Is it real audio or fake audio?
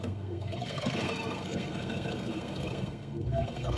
fake